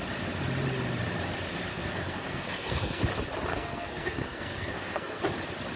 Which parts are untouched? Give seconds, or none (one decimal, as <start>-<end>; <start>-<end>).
0.0-1.7; 3.0-3.5; 5.2-5.8